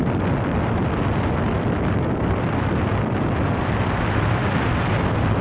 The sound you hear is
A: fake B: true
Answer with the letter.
A